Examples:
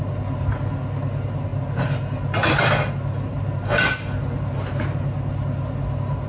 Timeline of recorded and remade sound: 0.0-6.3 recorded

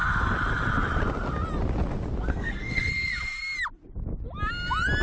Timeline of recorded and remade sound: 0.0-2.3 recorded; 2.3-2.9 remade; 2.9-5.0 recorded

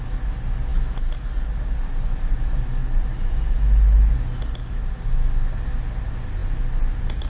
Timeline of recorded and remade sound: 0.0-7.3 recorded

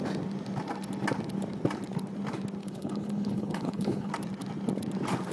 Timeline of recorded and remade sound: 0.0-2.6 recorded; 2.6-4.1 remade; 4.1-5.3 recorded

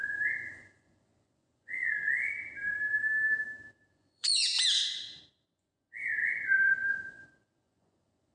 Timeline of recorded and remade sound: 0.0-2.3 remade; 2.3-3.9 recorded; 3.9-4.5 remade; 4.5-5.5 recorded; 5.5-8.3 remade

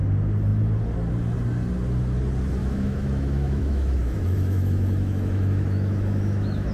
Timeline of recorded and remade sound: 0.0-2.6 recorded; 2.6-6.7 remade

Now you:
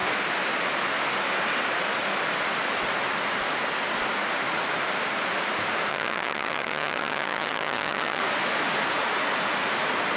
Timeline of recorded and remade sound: 0.0-5.9 recorded; 5.9-8.2 remade; 8.2-10.2 recorded